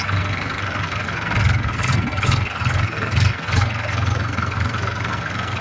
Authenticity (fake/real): fake